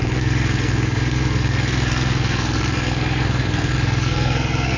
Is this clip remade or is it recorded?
remade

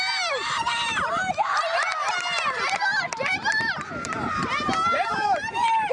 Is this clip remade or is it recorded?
remade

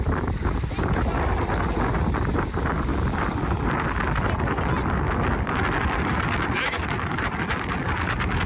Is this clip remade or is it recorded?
recorded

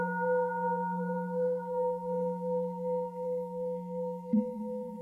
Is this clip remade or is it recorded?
remade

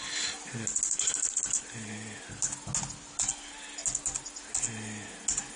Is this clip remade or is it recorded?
recorded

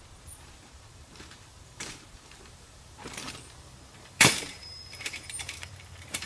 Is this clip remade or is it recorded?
remade